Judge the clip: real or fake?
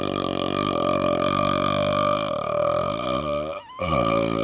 real